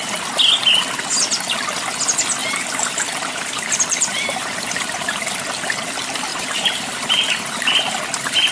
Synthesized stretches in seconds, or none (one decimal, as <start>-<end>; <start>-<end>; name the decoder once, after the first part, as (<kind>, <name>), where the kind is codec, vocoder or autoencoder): 2.4-5.4 (vocoder, BigVGAN v2); 6.3-7.3